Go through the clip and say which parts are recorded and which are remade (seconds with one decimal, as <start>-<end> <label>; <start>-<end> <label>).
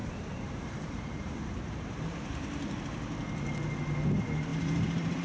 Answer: 0.0-2.8 remade; 2.8-4.5 recorded; 4.5-5.2 remade